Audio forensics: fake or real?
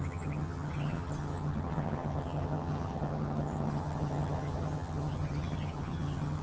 fake